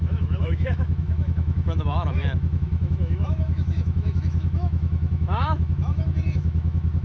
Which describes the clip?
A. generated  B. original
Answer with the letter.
A